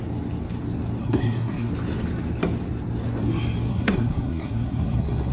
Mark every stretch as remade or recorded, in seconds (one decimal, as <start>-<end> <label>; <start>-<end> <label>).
0.0-1.0 recorded; 1.0-1.7 remade; 1.7-3.7 recorded; 3.7-5.3 remade